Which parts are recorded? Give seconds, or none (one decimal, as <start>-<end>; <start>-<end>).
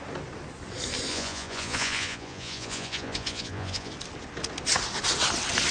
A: 0.0-1.1; 3.9-5.7